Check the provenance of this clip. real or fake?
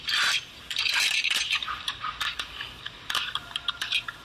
fake